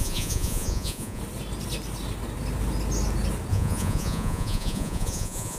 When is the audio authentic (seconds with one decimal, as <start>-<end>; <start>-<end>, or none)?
1.2-3.5